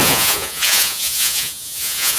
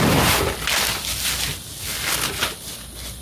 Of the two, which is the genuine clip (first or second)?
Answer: second